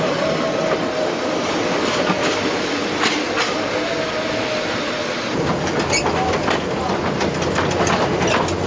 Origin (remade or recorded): recorded